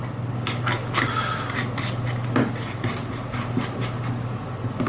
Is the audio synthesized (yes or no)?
no